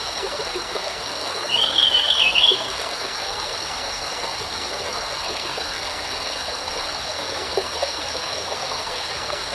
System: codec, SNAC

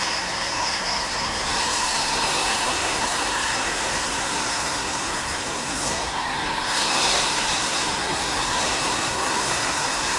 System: codec, SNAC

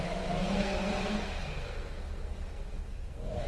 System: codec, SNAC